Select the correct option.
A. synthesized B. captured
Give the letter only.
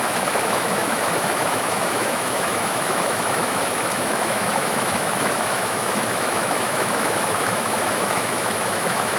A